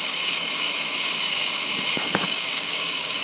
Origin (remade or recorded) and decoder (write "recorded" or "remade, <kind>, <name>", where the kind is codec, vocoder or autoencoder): remade, codec, DAC